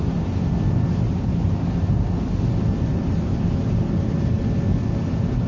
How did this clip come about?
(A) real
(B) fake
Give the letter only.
A